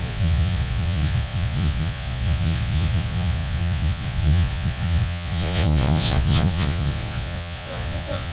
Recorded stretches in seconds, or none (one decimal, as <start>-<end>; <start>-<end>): none